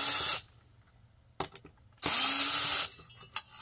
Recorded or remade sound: recorded